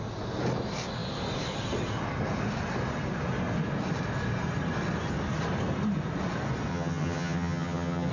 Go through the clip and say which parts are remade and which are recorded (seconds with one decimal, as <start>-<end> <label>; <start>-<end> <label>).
0.0-6.7 recorded; 6.7-8.1 remade